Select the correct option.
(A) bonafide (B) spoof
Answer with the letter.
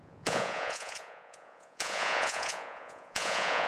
B